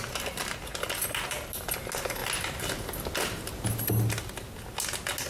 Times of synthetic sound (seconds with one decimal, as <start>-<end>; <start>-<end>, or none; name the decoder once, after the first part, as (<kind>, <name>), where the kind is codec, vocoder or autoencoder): none